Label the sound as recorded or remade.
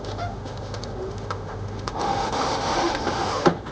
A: remade